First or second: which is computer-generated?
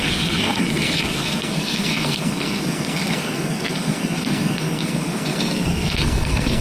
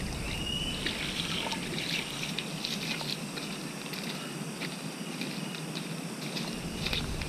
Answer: first